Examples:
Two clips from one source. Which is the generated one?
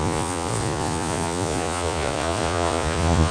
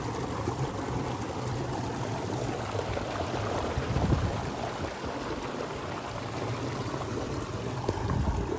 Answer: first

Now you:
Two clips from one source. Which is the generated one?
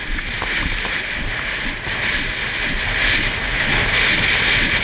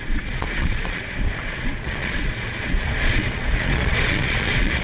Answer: second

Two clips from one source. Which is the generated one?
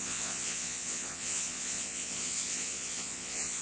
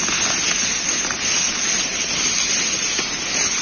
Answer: first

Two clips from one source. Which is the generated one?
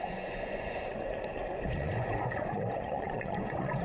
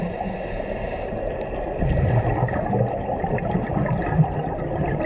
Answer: first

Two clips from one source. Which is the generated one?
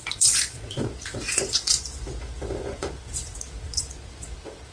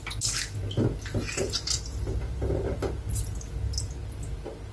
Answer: first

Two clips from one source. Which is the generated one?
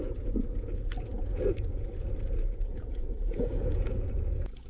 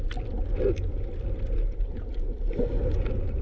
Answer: first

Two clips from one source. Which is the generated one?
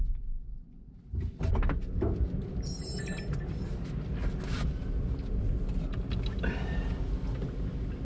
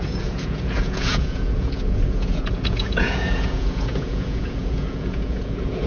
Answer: second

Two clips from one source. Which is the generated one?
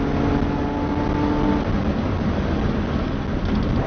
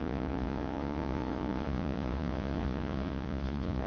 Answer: second